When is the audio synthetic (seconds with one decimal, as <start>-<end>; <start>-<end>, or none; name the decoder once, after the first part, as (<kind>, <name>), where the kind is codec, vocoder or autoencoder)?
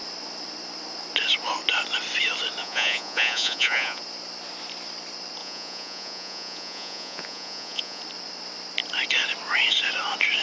2.6-4.0 (vocoder, Vocos); 5.4-8.0